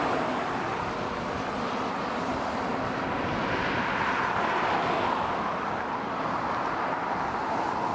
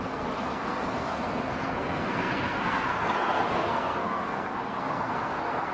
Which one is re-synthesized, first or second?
second